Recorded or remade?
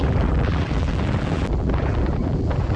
remade